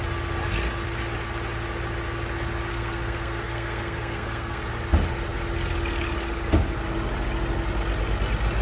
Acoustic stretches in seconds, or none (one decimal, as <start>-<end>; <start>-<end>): 0.0-2.7; 4.6-8.6